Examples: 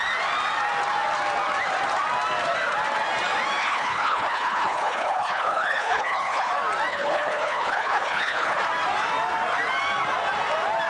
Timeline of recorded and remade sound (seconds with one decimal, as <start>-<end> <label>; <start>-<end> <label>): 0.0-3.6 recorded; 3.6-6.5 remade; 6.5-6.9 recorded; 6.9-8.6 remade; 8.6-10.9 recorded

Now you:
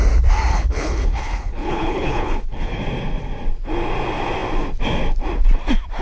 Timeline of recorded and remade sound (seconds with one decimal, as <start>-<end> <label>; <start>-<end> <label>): 0.0-0.5 recorded; 0.5-2.8 remade; 2.8-6.0 recorded

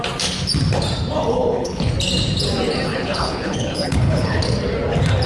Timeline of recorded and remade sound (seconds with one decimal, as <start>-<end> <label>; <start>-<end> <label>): 0.0-1.3 recorded; 1.3-1.9 remade; 1.9-2.9 recorded; 2.9-4.4 remade; 4.4-5.3 recorded